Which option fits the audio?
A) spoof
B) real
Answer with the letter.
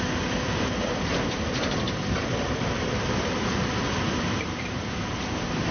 A